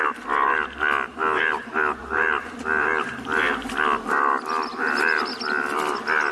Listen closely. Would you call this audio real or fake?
real